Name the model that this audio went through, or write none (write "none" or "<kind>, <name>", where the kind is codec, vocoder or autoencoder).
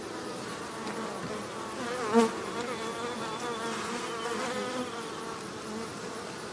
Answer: none